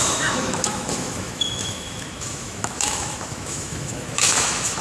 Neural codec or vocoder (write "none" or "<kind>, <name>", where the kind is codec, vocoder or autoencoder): autoencoder, DAC-VAE